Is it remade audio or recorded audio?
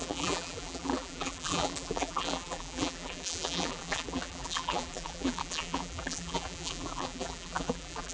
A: remade